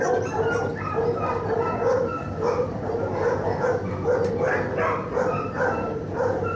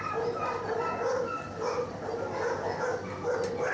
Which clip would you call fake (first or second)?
first